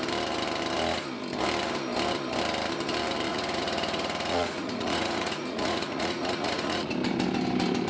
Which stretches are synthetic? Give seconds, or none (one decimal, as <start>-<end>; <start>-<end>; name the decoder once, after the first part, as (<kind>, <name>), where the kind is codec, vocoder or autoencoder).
3.3-6.9 (vocoder, Vocos)